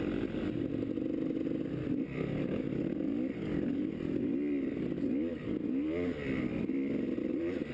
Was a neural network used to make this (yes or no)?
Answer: no